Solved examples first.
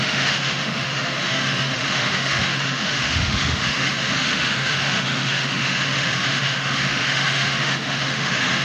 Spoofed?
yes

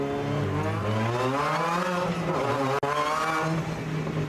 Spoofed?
no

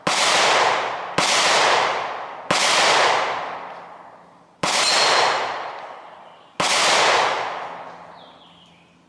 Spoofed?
no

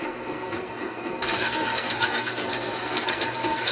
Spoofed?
yes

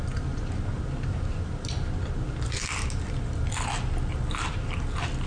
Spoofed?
no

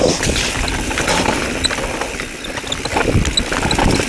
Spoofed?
no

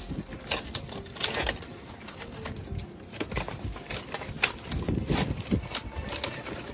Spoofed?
no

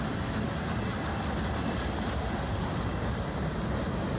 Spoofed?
no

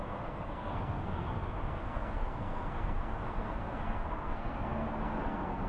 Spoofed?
yes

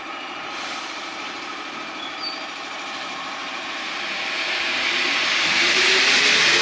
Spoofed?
yes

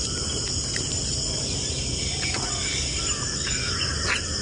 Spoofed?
yes